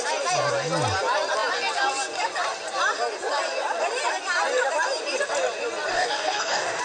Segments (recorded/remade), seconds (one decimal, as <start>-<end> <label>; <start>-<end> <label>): 0.0-5.9 recorded; 5.9-6.8 remade